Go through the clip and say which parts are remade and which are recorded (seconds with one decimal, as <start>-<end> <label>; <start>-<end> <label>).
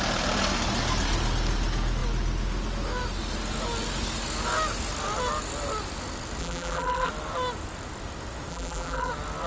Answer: 0.0-6.4 recorded; 6.4-7.1 remade; 7.1-8.5 recorded; 8.5-9.1 remade; 9.1-9.5 recorded